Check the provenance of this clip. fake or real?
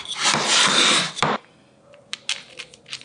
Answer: real